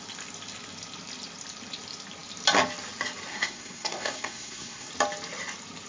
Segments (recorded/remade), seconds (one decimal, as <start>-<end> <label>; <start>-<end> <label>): 0.0-3.3 recorded; 3.3-4.9 remade; 4.9-5.9 recorded